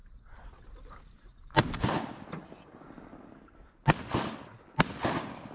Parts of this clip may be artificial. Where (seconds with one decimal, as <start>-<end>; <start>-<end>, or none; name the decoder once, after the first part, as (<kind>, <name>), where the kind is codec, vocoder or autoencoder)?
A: none